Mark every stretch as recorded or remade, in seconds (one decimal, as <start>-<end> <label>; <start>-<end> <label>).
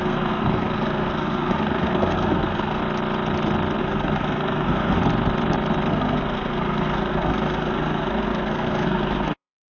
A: 0.0-2.8 remade; 2.8-3.8 recorded; 3.8-5.0 remade; 5.0-5.9 recorded; 5.9-9.7 remade